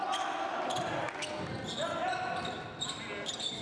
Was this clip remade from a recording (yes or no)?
no